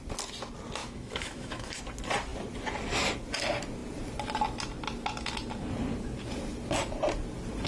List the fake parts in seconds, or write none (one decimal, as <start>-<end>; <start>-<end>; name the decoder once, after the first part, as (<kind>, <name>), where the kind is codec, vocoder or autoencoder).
0.8-1.8 (autoencoder, DAC-VAE)